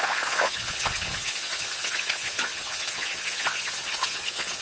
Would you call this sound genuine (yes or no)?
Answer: no